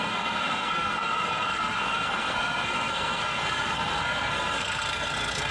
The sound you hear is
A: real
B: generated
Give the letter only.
B